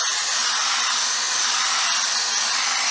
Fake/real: real